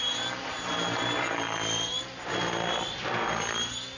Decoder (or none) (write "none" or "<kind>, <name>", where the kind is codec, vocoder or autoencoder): none